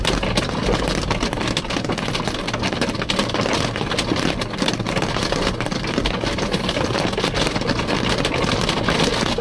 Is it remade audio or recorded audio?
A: recorded